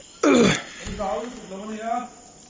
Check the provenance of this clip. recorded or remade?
recorded